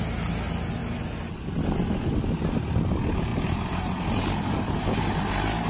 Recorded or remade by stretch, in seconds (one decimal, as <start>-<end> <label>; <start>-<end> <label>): 0.0-5.7 recorded